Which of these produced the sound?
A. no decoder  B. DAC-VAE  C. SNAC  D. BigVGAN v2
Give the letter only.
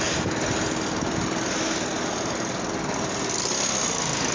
A